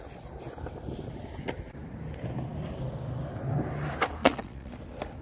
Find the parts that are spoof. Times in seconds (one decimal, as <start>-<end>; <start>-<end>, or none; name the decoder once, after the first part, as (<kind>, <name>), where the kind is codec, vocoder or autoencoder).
4.2-4.7 (vocoder, Vocos)